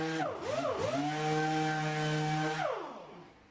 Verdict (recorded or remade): recorded